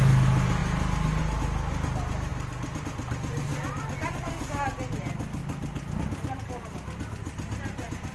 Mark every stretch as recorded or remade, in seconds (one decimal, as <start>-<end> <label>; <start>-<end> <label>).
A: 0.0-8.1 recorded